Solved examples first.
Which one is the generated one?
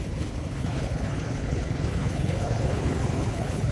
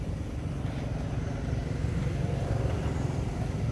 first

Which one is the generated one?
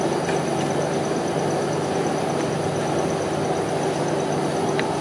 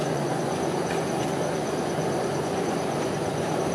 second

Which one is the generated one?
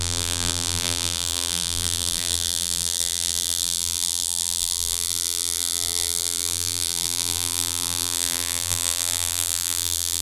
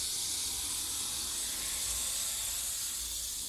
first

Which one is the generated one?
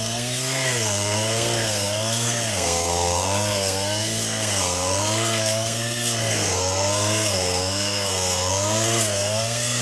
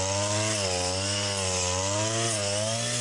first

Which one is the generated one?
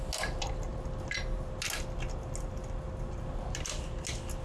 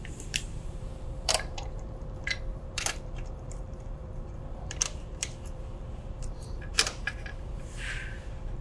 second